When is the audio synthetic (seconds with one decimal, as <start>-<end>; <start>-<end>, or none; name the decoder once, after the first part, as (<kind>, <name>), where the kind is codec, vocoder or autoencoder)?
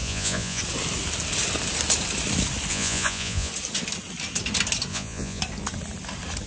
0.0-0.6 (vocoder, Vocos); 2.7-3.5; 4.9-5.4